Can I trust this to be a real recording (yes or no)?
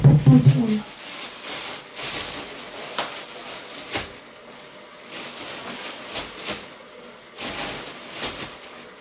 yes